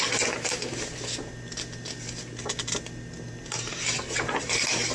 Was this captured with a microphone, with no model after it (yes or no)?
yes